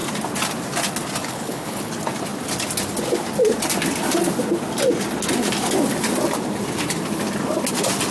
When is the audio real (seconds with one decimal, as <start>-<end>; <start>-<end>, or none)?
0.0-1.2; 1.9-8.1